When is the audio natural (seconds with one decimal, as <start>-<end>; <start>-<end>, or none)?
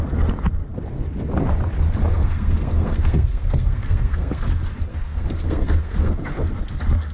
0.0-2.1; 4.4-4.9; 6.4-7.1